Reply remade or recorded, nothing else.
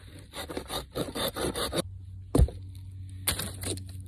recorded